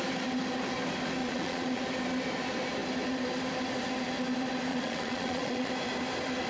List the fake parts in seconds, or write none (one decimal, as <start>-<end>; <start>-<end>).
1.2-1.8; 4.7-5.7